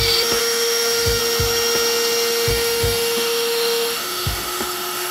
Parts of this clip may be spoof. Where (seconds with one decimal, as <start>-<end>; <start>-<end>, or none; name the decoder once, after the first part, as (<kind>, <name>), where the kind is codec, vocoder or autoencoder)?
0.4-1.2 (autoencoder, DAC-VAE); 2.5-5.1